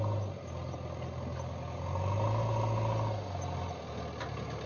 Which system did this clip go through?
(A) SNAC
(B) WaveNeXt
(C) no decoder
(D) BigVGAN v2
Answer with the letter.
C